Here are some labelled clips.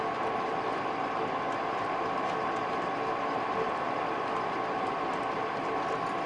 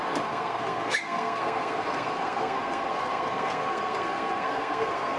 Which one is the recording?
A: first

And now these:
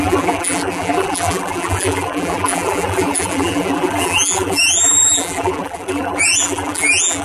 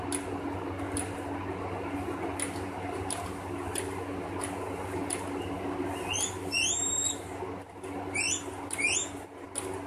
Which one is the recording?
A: second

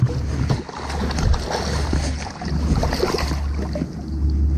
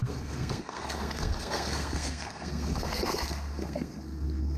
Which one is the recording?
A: first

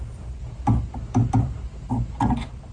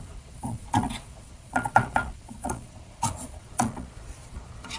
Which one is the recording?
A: first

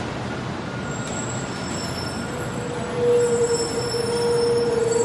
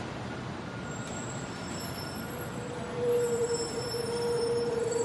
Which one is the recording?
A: first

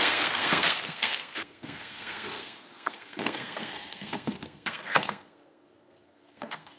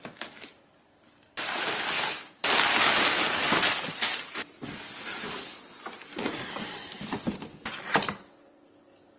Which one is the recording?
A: second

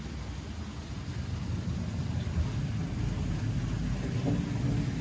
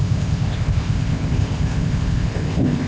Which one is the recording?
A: first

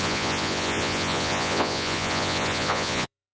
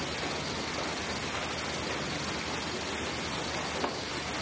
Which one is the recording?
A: second